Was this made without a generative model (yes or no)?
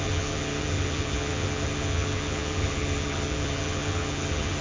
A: no